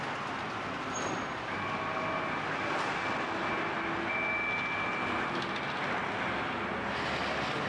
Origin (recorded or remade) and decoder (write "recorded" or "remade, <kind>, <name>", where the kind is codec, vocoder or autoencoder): recorded